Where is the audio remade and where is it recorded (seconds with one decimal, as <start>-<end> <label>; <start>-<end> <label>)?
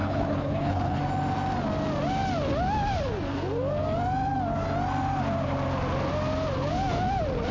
0.0-1.0 remade; 1.0-7.5 recorded